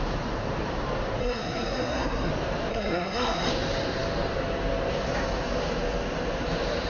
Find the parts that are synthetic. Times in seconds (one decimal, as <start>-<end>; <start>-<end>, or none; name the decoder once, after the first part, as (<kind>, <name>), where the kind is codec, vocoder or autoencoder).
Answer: 1.2-2.3 (codec, SNAC); 2.7-3.5